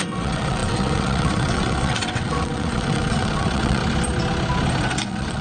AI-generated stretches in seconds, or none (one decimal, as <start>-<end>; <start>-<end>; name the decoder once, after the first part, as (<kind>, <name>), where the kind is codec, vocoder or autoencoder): 0.0-3.8 (vocoder, WaveNeXt); 4.8-5.4